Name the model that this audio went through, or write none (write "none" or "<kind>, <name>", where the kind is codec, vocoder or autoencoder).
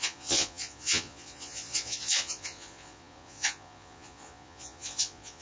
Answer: vocoder, Vocos